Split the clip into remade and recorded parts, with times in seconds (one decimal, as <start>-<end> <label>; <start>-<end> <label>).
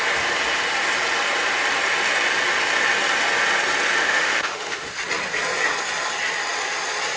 0.0-4.0 recorded; 4.0-4.9 remade; 4.9-7.2 recorded